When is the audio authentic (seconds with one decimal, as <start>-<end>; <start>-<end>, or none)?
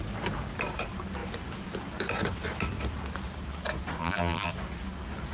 0.0-4.0; 4.5-5.3